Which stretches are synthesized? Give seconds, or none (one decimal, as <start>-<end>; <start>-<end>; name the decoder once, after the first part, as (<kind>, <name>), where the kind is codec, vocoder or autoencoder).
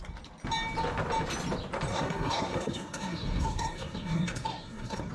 1.9-5.1 (codec, SNAC)